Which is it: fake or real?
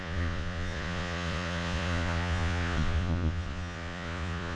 fake